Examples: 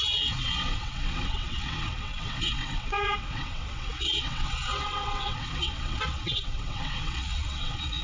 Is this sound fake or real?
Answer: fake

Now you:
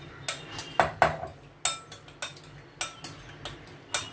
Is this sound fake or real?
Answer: real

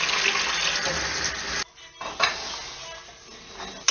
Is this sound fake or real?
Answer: real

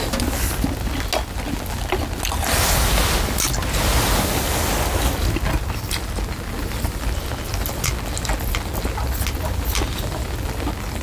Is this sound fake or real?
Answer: real